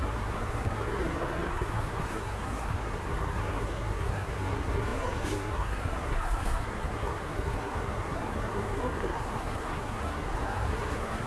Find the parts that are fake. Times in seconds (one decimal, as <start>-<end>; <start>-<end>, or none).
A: 0.0-11.3